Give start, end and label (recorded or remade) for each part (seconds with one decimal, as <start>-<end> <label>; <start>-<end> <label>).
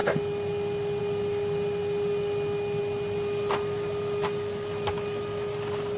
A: 0.0-6.0 recorded